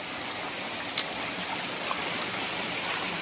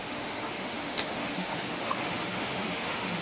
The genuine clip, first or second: first